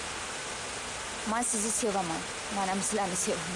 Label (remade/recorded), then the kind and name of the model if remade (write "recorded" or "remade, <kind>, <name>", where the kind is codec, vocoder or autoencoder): recorded